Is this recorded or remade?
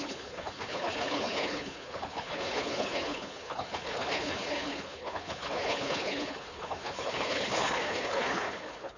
remade